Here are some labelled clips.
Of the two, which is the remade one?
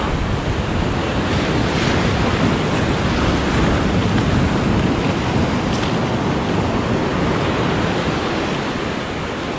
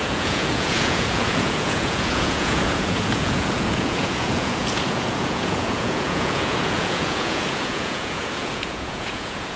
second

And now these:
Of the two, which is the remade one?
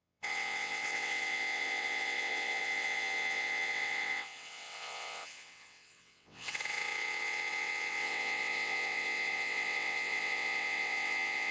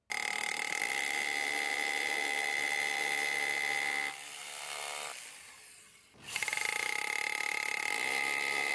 first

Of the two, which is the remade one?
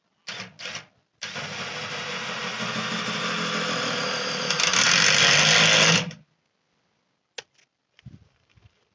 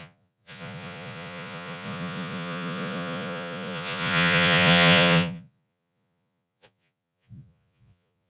second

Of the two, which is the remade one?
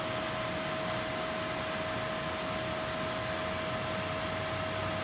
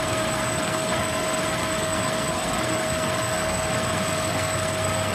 second